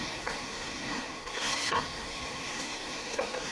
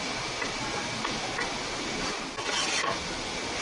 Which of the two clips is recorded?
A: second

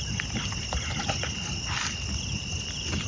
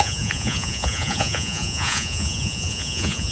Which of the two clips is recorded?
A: first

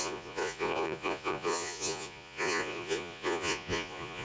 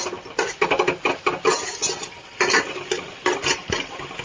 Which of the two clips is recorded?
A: second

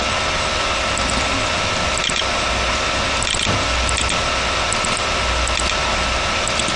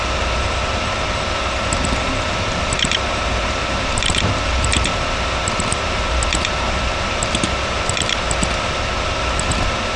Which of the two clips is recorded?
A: first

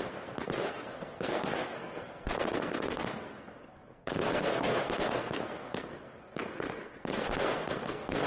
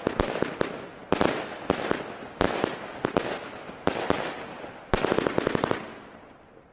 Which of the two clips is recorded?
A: second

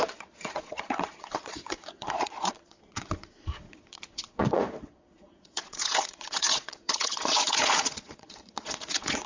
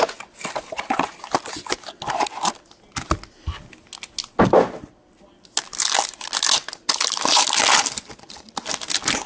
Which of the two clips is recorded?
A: second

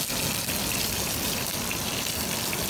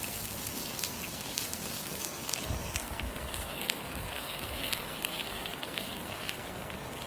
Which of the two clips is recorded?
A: first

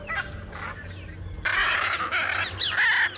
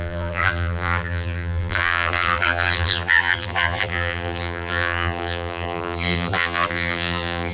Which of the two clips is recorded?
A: first